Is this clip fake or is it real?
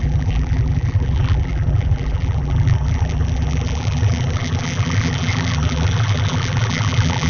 fake